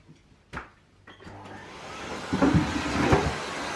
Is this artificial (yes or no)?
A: no